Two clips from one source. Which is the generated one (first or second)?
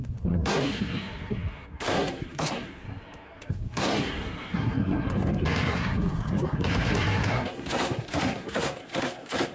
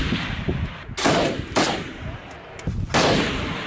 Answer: first